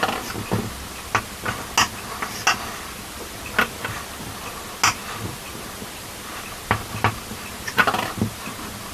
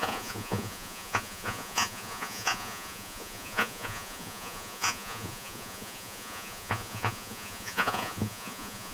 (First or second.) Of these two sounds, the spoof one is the second